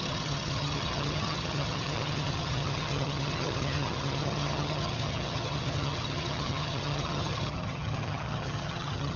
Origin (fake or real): fake